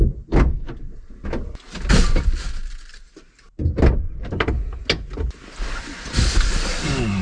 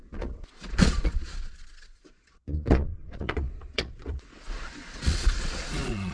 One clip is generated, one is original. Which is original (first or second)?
first